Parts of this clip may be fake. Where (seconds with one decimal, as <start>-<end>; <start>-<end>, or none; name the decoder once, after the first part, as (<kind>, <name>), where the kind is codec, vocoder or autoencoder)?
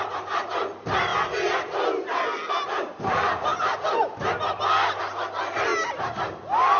none